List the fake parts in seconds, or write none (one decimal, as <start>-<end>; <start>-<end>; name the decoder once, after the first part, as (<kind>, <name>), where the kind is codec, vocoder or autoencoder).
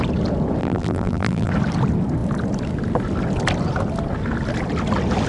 0.6-1.5 (vocoder, BigVGAN v2)